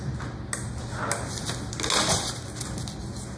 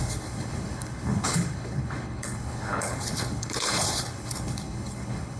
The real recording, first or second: first